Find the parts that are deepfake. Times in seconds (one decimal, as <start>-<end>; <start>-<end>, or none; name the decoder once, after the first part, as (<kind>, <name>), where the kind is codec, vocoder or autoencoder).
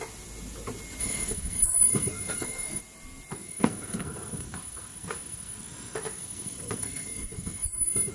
1.0-2.8 (codec, SNAC); 3.3-8.1